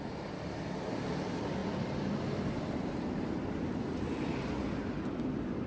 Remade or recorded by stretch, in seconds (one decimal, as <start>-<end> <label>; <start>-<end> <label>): 0.0-5.7 recorded